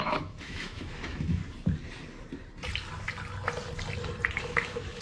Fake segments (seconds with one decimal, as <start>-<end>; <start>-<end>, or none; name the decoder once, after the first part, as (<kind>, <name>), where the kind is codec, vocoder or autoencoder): 0.0-1.4 (autoencoder, DAC-VAE); 4.4-5.0